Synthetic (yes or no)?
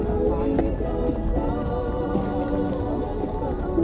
no